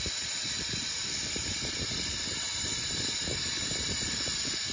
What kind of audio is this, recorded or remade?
remade